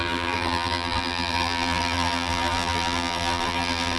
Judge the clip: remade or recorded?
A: remade